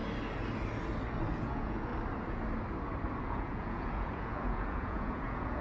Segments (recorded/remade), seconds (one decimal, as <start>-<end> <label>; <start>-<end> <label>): 0.0-1.4 recorded; 1.4-1.9 remade; 1.9-3.2 recorded; 3.2-5.6 remade